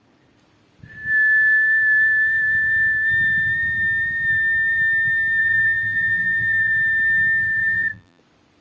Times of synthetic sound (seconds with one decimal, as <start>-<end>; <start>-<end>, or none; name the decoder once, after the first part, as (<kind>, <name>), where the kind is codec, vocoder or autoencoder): 5.4-6.7 (vocoder, BigVGAN v2); 7.6-8.2